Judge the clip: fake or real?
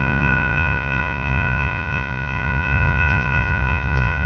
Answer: fake